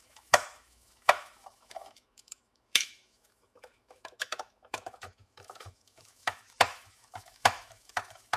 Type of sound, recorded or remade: remade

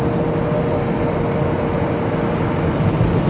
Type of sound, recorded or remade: recorded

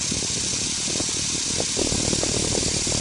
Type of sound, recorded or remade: recorded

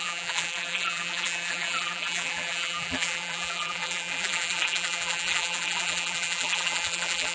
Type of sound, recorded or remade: remade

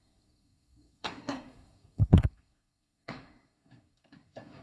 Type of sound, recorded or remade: remade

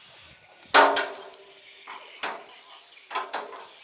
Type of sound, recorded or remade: recorded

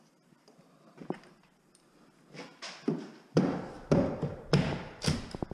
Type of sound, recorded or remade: recorded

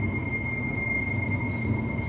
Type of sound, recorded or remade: recorded